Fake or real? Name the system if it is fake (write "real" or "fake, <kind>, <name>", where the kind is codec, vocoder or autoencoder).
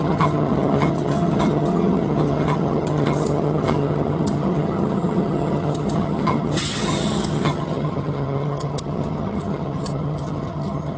fake, vocoder, HiFi-GAN